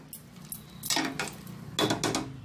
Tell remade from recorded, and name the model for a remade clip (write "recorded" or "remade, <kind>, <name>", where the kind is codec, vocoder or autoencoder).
recorded